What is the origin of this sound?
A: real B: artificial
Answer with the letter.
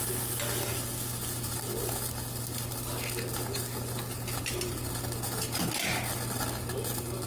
A